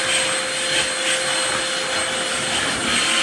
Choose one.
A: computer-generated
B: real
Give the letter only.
B